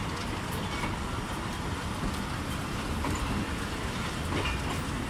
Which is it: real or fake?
real